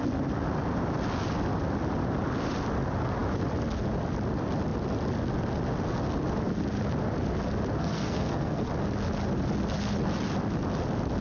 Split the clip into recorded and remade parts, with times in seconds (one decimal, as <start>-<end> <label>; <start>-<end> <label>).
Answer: 0.0-7.8 recorded; 7.8-8.7 remade; 8.7-11.2 recorded